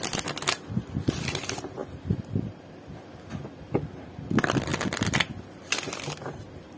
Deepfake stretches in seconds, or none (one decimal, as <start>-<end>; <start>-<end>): none